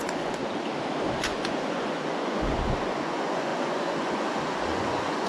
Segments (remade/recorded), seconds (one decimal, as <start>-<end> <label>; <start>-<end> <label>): 0.0-0.4 remade; 0.4-1.2 recorded; 1.2-5.3 remade